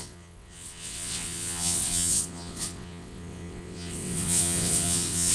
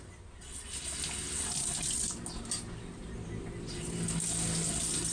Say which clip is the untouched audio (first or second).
second